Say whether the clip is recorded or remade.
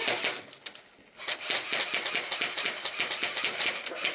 recorded